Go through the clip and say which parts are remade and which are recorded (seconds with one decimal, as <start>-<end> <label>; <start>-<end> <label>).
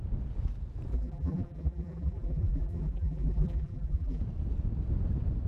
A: 0.0-0.9 recorded; 0.9-4.2 remade; 4.2-5.5 recorded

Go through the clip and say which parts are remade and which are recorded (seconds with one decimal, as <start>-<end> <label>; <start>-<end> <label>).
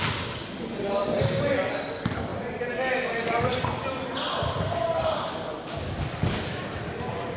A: 0.0-7.4 recorded